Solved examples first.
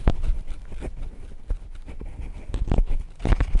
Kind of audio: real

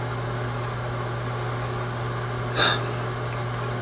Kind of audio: real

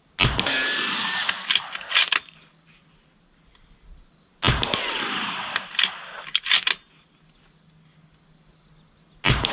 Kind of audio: real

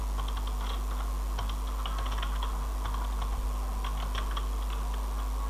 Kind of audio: real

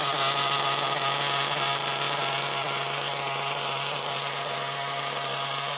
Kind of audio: real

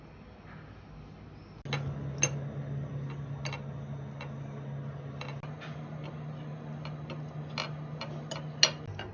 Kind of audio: real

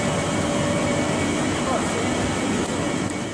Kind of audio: fake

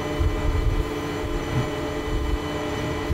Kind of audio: fake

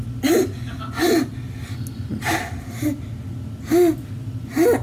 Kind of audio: real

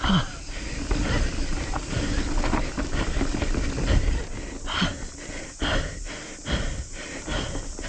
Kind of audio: real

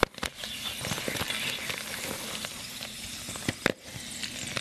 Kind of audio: real